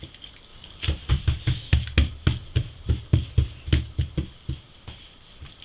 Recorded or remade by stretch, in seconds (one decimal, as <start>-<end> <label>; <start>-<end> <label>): 0.0-0.5 recorded; 0.5-1.1 remade; 1.1-2.4 recorded; 2.4-2.9 remade; 2.9-5.6 recorded